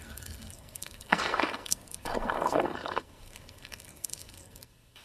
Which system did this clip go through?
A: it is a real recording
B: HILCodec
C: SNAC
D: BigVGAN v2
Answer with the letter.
C